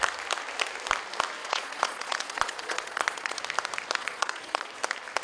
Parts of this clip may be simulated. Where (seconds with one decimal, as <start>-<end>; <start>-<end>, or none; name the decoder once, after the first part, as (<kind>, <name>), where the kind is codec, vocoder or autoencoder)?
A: 1.4-3.4 (vocoder, Vocos); 4.0-4.7